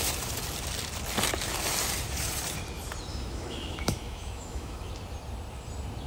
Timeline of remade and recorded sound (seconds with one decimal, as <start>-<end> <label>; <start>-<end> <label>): 0.0-3.1 recorded; 3.1-4.9 remade; 4.9-6.1 recorded